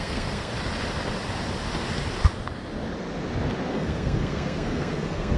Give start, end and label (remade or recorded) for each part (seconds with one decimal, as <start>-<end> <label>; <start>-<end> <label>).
0.0-0.5 remade; 0.5-3.7 recorded; 3.7-5.4 remade